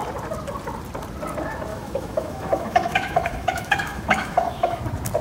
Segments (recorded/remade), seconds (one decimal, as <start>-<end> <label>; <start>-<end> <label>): 0.0-1.7 recorded; 1.7-4.8 remade; 4.8-5.2 recorded